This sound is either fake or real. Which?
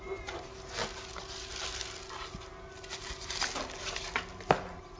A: real